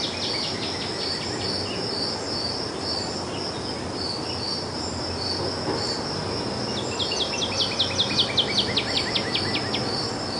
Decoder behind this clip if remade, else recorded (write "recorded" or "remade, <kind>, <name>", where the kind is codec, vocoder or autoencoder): recorded